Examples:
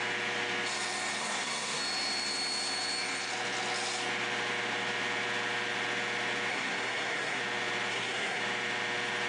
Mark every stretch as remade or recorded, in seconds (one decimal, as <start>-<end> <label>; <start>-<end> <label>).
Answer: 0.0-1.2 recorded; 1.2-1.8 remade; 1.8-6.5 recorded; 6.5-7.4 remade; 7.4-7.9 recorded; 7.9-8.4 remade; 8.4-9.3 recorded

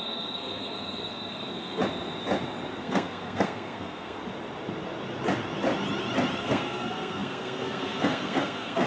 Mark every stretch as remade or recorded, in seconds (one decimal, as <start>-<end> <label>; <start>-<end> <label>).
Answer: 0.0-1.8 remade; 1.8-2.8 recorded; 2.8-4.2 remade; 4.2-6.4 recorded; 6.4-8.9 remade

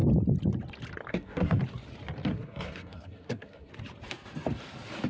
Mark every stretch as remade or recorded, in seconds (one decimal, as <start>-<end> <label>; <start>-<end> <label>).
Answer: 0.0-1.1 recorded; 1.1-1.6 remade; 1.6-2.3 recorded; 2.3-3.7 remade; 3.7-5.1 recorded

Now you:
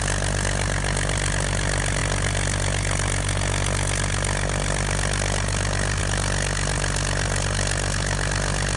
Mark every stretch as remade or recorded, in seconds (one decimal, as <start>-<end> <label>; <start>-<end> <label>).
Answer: 0.0-8.8 recorded

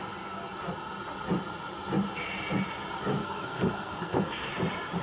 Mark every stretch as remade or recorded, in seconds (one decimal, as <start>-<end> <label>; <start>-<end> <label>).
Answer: 0.0-3.2 recorded; 3.2-4.5 remade; 4.5-5.0 recorded

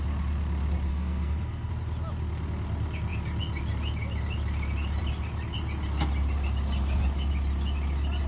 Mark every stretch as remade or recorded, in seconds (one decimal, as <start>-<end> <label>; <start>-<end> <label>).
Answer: 0.0-0.9 recorded; 0.9-1.7 remade; 1.7-8.3 recorded

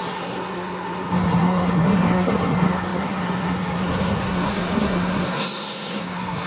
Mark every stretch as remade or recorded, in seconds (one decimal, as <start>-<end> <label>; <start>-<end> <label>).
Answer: 0.0-6.5 remade